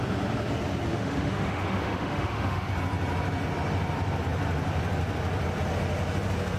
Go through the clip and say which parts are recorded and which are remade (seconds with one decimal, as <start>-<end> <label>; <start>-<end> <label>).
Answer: 0.0-0.9 recorded; 0.9-2.7 remade; 2.7-6.6 recorded